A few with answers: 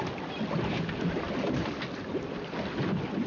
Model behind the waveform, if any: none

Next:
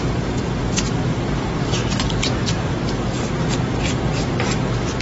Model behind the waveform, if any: none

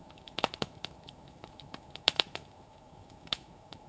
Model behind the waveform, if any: autoencoder, DAC-VAE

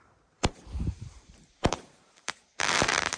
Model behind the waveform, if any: vocoder, BigVGAN v2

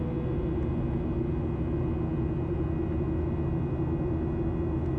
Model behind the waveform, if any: none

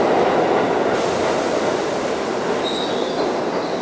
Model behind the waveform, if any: none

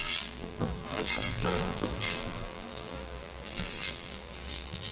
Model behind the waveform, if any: vocoder, BigVGAN v2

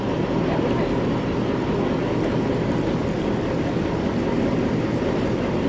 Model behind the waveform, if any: none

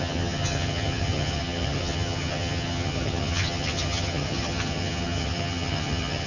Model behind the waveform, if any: vocoder, HiFi-GAN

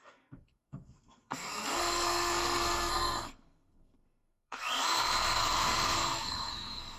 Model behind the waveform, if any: codec, SNAC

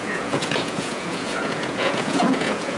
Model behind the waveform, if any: vocoder, Vocos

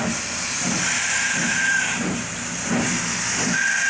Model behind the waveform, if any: none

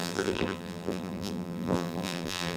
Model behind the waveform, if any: vocoder, BigVGAN v2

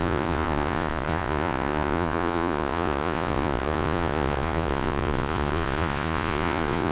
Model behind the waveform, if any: vocoder, Vocos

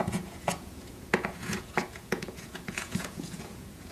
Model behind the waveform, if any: vocoder, Vocos